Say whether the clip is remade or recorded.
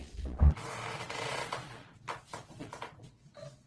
remade